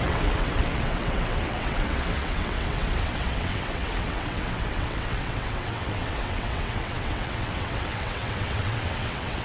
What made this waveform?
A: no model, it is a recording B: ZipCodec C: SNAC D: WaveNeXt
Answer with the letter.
D